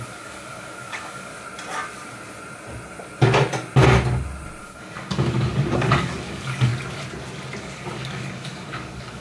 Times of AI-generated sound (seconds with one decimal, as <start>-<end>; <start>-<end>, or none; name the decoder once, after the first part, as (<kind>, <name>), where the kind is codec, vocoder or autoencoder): 0.0-1.3 (codec, DAC); 4.6-6.7; 7.6-9.2